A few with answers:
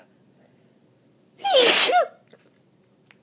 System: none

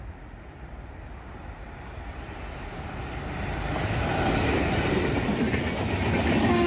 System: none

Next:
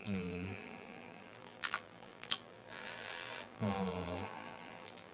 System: vocoder, BigVGAN v2